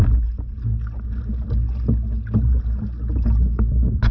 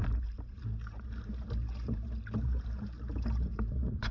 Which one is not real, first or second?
second